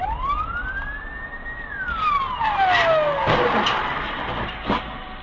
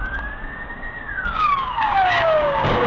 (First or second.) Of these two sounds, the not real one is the second